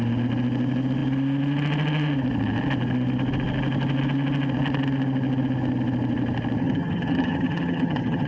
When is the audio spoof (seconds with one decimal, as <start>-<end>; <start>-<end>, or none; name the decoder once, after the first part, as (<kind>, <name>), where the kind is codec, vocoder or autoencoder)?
6.6-8.3 (vocoder, HiFi-GAN)